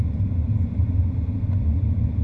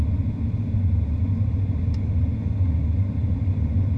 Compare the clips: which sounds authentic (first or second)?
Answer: second